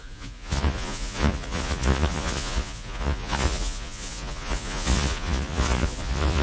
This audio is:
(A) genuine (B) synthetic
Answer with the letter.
B